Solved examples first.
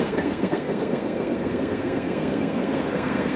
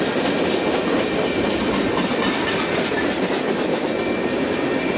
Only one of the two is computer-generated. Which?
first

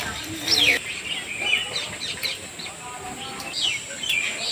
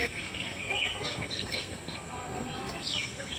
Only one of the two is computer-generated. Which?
second